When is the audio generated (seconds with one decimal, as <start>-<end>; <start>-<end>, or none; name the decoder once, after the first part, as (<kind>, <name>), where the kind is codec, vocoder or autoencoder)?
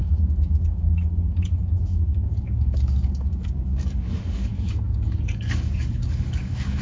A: 0.0-6.8 (codec, DAC)